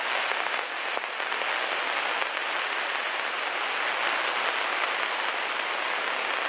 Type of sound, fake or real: real